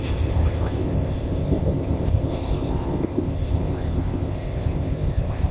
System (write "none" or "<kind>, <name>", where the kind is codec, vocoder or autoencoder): codec, ZipCodec